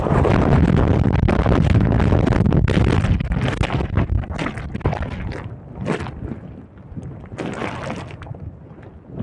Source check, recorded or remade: recorded